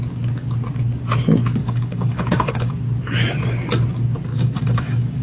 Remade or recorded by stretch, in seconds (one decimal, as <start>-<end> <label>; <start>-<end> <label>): 0.0-1.6 recorded; 1.6-2.7 remade; 2.7-4.3 recorded; 4.3-5.2 remade